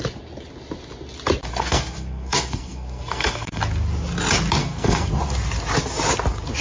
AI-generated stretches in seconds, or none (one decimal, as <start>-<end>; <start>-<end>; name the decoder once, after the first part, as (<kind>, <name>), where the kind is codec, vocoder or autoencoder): 1.5-3.6 (codec, SNAC); 4.6-5.1